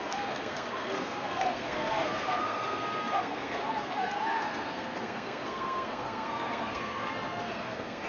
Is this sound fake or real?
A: fake